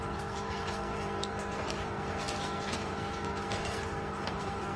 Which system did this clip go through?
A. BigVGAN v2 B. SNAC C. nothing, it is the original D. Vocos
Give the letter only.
B